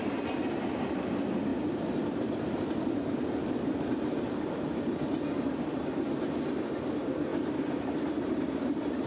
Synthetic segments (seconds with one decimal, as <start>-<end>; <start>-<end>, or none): 1.5-4.2; 7.3-8.4